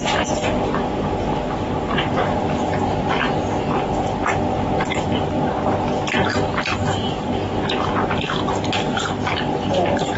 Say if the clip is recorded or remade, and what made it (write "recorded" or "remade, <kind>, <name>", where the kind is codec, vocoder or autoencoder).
recorded